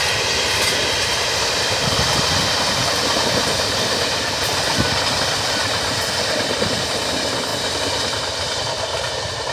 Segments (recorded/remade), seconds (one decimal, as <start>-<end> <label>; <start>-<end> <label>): 0.0-7.5 remade; 7.5-8.0 recorded; 8.0-9.5 remade